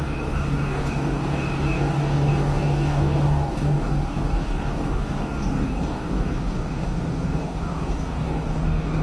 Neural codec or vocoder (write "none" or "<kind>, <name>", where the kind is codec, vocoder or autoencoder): codec, DAC